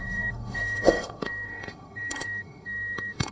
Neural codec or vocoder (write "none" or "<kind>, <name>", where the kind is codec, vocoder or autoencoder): autoencoder, DAC-VAE